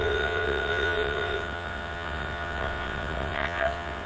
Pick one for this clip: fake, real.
fake